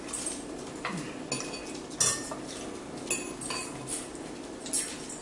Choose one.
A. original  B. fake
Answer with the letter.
A